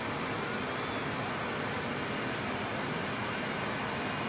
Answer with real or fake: real